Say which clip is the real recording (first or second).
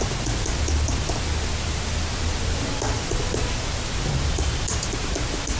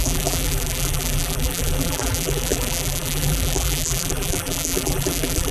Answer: first